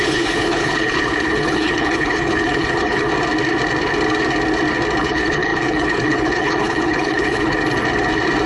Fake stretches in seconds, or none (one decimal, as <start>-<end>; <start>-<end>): 0.0-3.1; 5.0-7.6